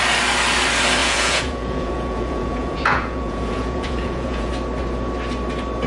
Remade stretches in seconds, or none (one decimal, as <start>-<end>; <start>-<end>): 1.0-4.5